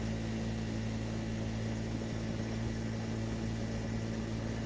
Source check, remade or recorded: recorded